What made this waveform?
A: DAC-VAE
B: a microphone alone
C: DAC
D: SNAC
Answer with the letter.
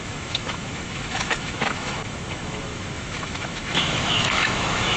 A